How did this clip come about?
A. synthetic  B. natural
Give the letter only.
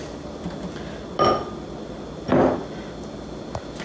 B